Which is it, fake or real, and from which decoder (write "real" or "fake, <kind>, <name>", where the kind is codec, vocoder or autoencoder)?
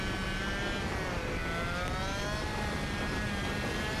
real